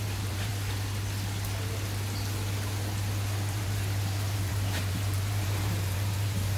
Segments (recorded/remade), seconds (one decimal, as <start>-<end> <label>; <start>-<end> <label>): 0.0-0.5 remade; 0.5-3.5 recorded; 3.5-6.6 remade